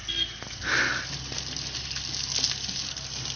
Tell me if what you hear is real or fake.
real